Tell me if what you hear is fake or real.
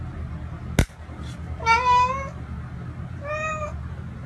real